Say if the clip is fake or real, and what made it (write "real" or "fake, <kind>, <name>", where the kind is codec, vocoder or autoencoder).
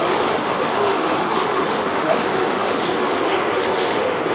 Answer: fake, autoencoder, DAC-VAE